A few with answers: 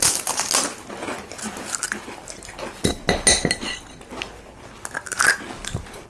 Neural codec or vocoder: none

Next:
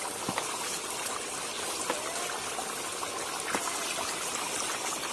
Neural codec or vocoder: none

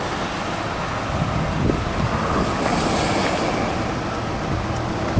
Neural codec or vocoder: none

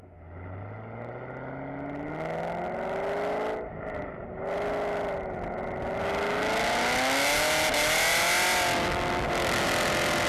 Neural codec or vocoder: none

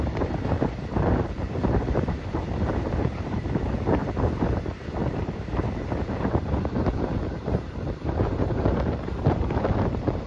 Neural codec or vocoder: vocoder, BigVGAN v2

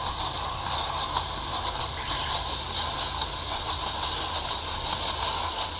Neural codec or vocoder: none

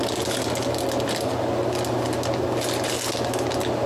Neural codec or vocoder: none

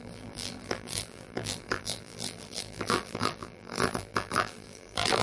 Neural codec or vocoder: vocoder, BigVGAN v2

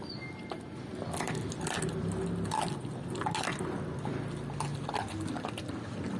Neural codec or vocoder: none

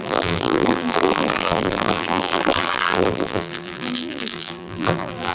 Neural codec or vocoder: vocoder, BigVGAN v2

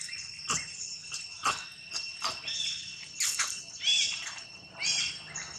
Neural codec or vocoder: none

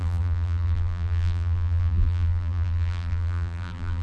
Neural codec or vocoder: vocoder, BigVGAN v2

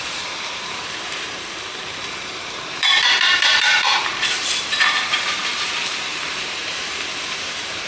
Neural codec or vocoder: vocoder, BigVGAN v2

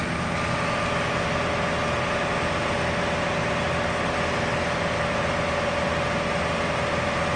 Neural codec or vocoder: none